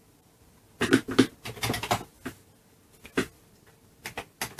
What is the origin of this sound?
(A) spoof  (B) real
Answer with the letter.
B